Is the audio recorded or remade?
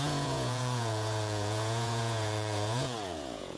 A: remade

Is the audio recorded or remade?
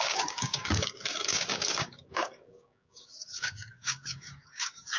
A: remade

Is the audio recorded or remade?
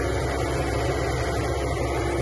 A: recorded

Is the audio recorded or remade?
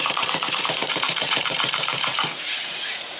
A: remade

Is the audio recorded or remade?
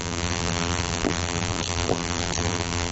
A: remade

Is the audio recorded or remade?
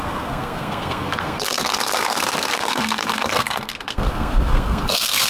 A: remade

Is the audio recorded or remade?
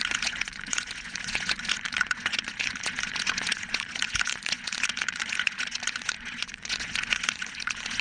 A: remade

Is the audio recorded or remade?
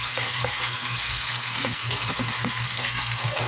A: remade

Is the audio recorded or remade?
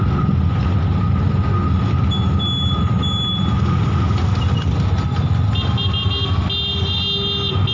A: recorded